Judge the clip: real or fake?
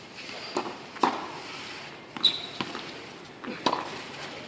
real